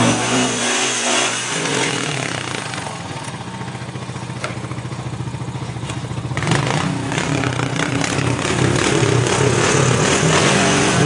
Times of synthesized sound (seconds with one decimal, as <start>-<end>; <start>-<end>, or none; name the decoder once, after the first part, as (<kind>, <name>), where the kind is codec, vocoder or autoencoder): 0.0-11.1 (vocoder, Vocos)